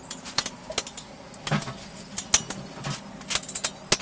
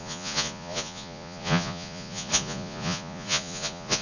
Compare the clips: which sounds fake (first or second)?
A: second